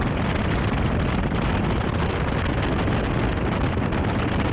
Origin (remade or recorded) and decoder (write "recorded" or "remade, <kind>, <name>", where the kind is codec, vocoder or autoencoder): recorded